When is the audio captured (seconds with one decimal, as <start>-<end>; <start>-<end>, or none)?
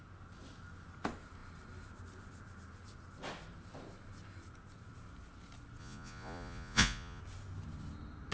0.0-5.8; 7.2-8.3